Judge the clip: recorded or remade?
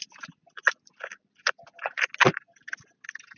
recorded